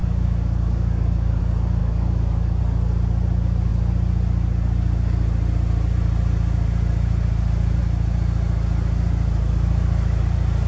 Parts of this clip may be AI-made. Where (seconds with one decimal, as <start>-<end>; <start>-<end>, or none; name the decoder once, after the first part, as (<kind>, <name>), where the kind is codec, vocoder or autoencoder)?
0.0-1.4 (codec, DAC); 1.8-2.6